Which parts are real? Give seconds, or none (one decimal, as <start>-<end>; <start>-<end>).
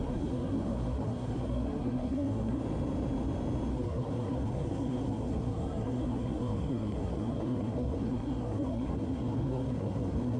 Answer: 2.6-3.7